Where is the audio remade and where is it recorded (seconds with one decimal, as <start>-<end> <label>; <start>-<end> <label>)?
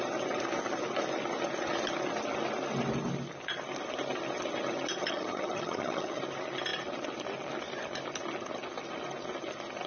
0.0-5.0 recorded; 5.0-6.2 remade; 6.2-9.9 recorded